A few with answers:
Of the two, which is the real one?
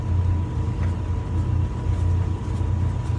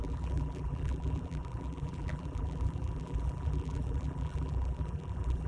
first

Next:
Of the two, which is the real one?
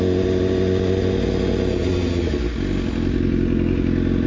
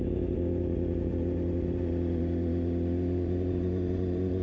first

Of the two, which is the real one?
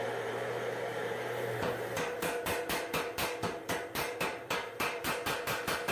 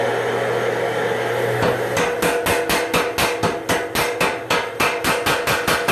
second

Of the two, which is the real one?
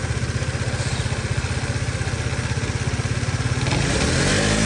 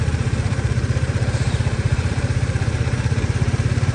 first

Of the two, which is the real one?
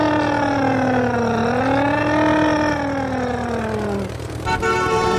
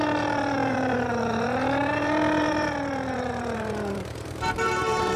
first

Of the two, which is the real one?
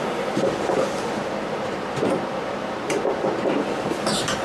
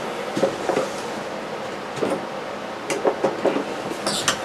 second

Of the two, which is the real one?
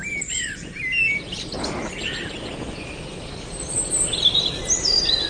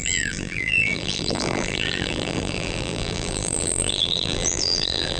first